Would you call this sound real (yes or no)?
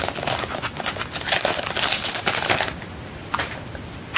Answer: yes